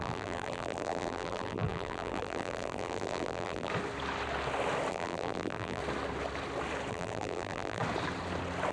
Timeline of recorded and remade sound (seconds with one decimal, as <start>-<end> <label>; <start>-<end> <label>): 0.0-3.7 remade; 3.7-4.9 recorded; 4.9-5.8 remade; 5.8-6.9 recorded; 6.9-7.8 remade; 7.8-8.7 recorded